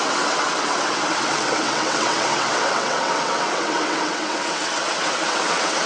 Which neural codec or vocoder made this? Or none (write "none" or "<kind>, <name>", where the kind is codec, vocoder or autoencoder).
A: vocoder, WaveNeXt